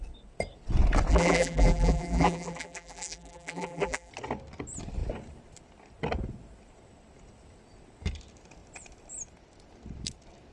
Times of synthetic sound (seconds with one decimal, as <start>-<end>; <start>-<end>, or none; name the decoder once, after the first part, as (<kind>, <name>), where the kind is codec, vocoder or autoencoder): 1.1-4.1 (vocoder, BigVGAN v2)